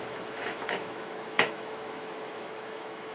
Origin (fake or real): fake